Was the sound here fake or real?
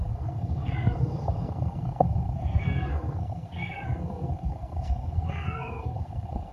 fake